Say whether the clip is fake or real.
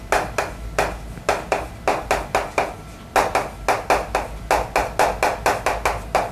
real